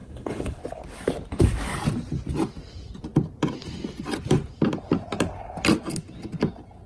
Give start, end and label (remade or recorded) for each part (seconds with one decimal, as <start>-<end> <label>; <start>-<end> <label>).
0.0-0.6 remade; 0.6-6.9 recorded